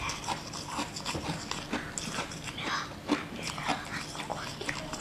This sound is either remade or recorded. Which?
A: recorded